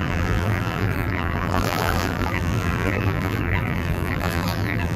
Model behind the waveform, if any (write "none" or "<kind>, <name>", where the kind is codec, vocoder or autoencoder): vocoder, BigVGAN v2